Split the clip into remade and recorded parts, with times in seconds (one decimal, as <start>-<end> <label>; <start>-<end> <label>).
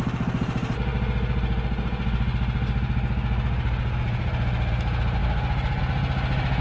0.0-6.6 recorded